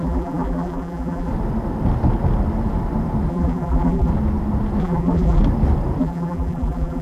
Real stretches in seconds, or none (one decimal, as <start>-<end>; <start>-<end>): 1.3-3.3; 4.1-4.8; 5.4-6.0